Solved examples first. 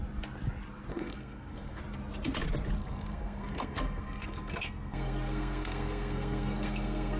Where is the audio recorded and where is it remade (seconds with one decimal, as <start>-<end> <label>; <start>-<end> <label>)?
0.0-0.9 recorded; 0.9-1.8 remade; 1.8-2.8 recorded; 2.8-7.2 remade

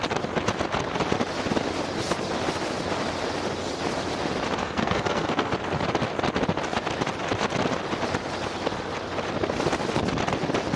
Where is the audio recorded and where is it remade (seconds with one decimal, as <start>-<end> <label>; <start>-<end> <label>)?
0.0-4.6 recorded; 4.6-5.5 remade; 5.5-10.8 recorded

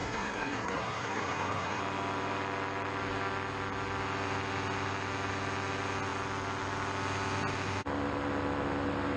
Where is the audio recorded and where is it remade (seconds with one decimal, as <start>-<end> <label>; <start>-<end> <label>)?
0.0-1.8 remade; 1.8-9.2 recorded